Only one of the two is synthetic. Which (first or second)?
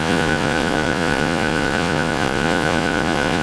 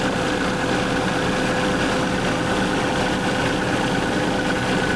first